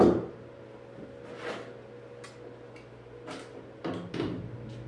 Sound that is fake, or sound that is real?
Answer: real